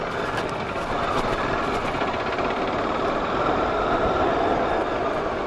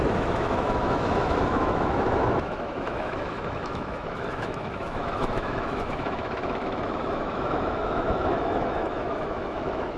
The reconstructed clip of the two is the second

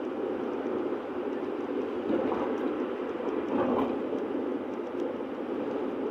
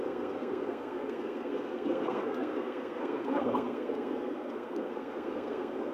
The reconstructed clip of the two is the second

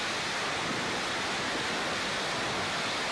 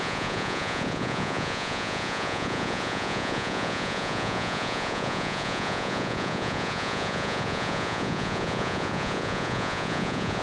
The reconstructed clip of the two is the second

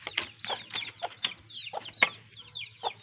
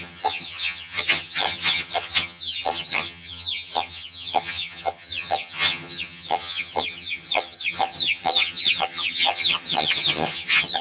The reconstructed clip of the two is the second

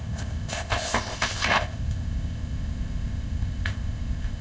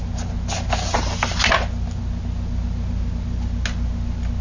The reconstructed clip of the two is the first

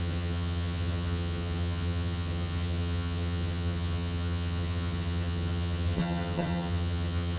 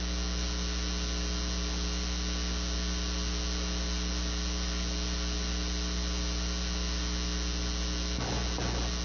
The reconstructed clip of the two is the first